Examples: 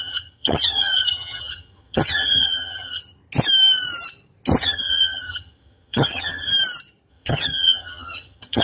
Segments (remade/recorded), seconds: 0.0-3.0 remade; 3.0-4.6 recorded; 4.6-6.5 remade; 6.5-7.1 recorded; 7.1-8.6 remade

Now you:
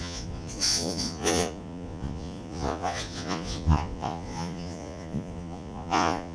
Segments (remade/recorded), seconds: 0.0-6.3 remade

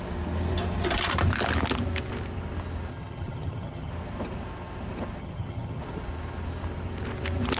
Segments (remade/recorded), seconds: 0.0-2.9 recorded; 2.9-3.9 remade; 3.9-5.2 recorded; 5.2-5.8 remade; 5.8-7.6 recorded

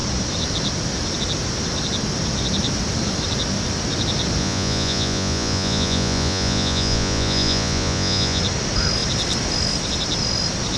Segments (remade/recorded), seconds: 0.0-4.4 recorded; 4.4-8.4 remade; 8.4-10.8 recorded

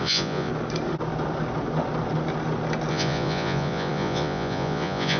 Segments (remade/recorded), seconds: 0.0-0.5 remade; 0.5-2.9 recorded; 2.9-5.2 remade